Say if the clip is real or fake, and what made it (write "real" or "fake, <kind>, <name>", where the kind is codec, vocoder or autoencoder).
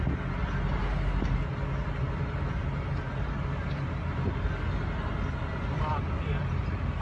real